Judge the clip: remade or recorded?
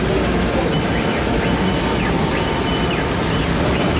recorded